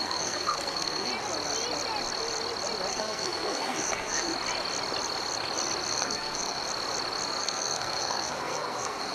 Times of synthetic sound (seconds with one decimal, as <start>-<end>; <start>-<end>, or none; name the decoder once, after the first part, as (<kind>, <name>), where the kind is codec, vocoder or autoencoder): 0.0-1.1 (codec, SNAC); 2.9-4.3; 5.9-6.6; 7.4-9.1

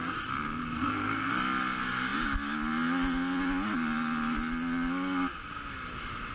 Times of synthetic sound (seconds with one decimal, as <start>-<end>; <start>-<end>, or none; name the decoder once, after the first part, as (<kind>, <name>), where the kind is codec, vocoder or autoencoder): 0.6-1.3 (codec, SNAC)

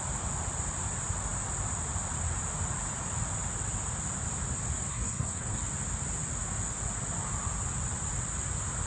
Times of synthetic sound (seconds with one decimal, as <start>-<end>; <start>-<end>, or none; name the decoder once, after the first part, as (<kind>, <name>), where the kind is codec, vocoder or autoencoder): 4.9-5.6 (codec, SNAC)

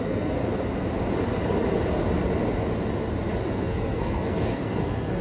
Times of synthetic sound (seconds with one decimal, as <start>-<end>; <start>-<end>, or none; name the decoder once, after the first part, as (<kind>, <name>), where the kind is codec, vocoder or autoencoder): 0.0-0.4 (codec, SNAC); 3.5-5.2

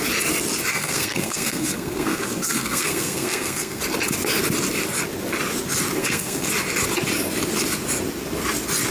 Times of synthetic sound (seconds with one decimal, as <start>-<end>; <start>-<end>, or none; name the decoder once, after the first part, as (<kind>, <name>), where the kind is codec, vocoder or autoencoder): 0.7-3.8 (codec, SNAC); 6.0-6.5